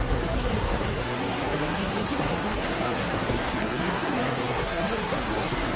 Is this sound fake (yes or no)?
yes